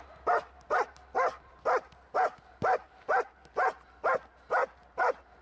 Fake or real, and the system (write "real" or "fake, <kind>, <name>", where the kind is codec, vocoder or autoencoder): real